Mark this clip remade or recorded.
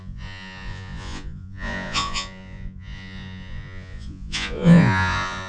remade